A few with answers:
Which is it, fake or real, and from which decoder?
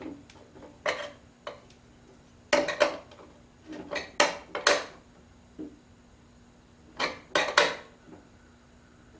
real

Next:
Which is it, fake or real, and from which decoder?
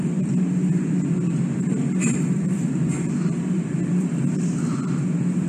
fake, vocoder, BigVGAN v2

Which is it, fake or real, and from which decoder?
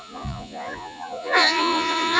fake, vocoder, Vocos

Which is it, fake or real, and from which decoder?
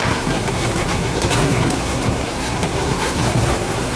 fake, codec, SNAC